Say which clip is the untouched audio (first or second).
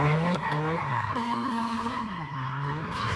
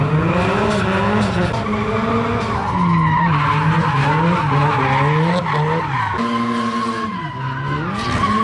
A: second